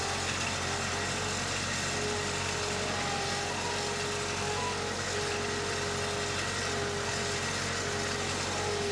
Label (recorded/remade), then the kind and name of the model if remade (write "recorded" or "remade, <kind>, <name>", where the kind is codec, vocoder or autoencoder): recorded